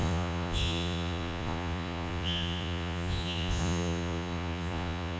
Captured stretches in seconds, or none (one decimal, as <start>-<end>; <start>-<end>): none